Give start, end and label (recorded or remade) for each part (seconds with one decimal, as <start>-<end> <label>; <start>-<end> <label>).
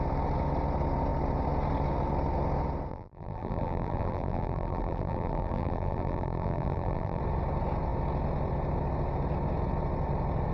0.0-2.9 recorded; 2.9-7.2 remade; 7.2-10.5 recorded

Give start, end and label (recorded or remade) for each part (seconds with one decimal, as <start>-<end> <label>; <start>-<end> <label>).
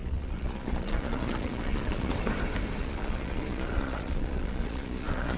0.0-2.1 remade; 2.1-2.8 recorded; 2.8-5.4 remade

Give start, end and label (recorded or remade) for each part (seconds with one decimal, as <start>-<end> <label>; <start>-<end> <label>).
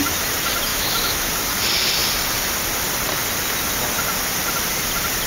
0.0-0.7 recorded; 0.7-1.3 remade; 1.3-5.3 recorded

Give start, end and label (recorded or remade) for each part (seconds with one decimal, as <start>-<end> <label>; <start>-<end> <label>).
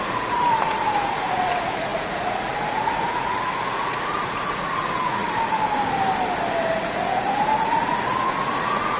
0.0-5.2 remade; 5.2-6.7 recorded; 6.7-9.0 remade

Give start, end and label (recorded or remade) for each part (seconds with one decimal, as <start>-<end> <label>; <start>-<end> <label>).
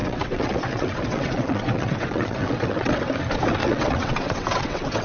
0.0-3.0 remade; 3.0-3.6 recorded; 3.6-5.0 remade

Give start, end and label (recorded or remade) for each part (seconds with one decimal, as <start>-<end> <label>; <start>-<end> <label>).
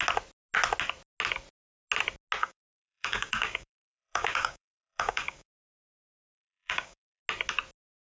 0.0-2.4 recorded; 2.4-7.2 remade; 7.2-8.2 recorded